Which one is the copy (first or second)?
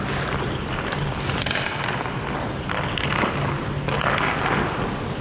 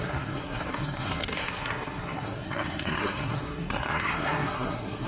second